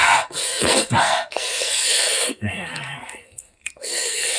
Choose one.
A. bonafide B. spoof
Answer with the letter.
B